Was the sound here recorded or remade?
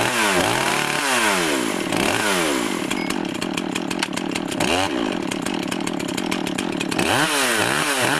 recorded